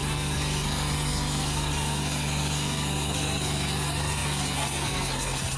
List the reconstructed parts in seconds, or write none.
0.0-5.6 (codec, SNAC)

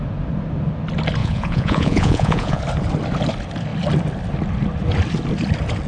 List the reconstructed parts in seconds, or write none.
1.2-2.6 (vocoder, Vocos)